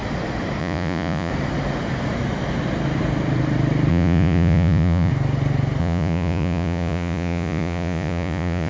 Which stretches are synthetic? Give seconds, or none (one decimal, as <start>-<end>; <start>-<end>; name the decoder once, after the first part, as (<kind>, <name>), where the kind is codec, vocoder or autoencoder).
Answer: 0.6-1.3 (vocoder, Vocos); 3.9-5.1; 5.8-8.7